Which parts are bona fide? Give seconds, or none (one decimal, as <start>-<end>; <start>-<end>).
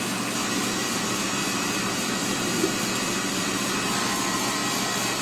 0.0-0.8; 3.9-5.2